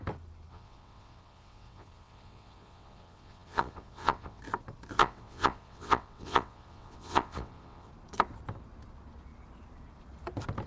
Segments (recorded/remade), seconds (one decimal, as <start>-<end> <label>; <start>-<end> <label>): 0.0-0.5 recorded; 0.5-4.4 remade; 4.4-5.0 recorded; 5.0-7.9 remade; 7.9-10.7 recorded